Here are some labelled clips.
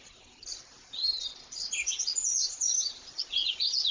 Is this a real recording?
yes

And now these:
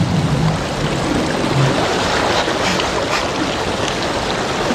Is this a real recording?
yes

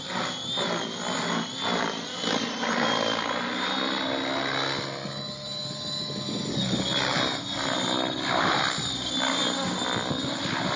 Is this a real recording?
yes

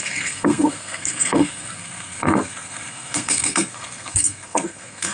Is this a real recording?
no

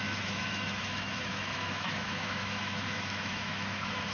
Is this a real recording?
no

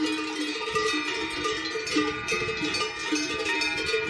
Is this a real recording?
yes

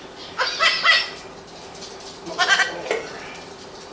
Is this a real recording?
yes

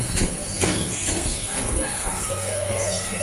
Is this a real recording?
no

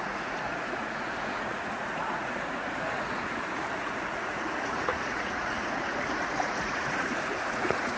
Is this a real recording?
no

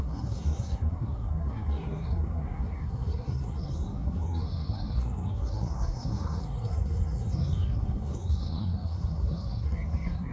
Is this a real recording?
no